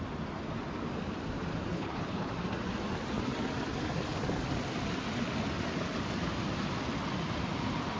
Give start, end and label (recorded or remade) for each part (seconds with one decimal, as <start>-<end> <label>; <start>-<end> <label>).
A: 0.0-1.7 recorded; 1.7-2.3 remade; 2.3-8.0 recorded